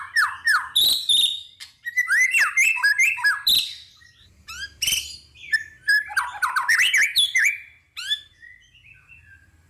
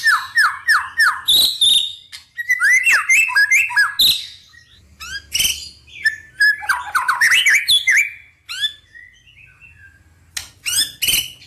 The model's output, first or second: first